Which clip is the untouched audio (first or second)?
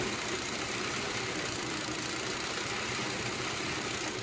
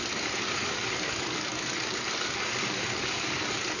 first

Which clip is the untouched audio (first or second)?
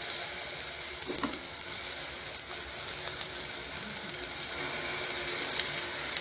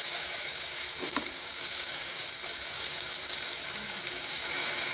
first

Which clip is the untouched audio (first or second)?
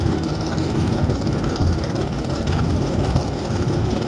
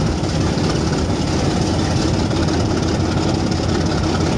second